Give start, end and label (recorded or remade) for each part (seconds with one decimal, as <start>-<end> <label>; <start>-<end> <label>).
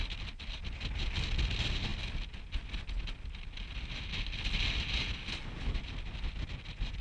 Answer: 0.0-7.0 recorded